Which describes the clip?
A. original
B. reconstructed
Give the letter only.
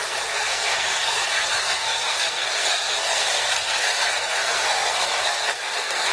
B